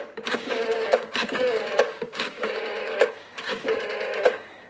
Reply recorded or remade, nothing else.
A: remade